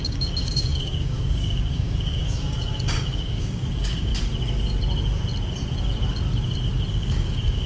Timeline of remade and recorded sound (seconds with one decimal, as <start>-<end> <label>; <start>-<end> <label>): 0.0-4.1 remade; 4.1-6.9 recorded; 6.9-7.7 remade